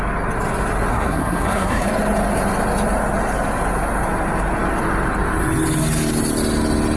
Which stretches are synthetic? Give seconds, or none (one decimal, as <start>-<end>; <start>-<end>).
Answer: 0.9-1.9